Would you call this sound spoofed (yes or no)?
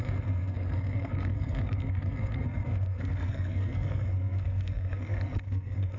yes